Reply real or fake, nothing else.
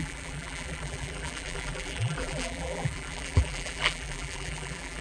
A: fake